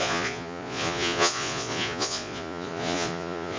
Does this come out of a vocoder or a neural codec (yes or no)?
yes